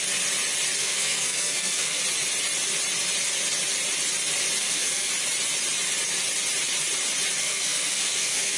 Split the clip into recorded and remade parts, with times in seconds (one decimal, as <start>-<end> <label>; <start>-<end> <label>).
0.0-0.8 recorded; 0.8-2.0 remade; 2.0-4.6 recorded; 4.6-5.1 remade; 5.1-7.4 recorded; 7.4-8.6 remade